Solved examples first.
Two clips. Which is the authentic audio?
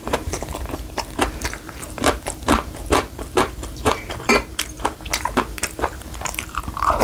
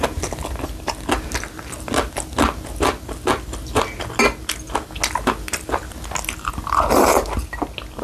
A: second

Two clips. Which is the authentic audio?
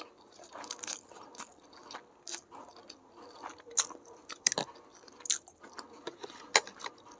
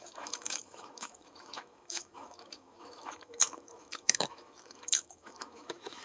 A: first